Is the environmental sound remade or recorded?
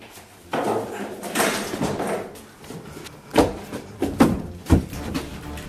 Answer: remade